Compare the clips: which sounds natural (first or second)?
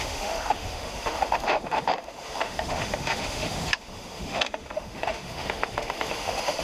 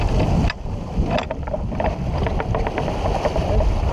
second